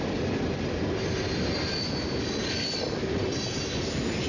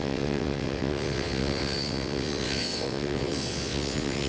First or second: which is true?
first